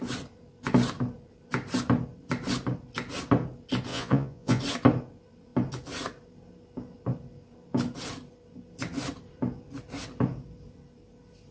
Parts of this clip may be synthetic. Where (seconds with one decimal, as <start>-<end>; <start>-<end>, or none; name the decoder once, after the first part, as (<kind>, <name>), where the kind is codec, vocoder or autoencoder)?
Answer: 3.9-4.6 (vocoder, Vocos)